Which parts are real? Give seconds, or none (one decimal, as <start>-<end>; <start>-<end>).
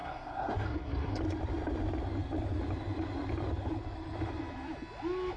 1.2-5.4